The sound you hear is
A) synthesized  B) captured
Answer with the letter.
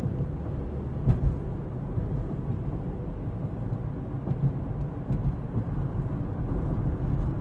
B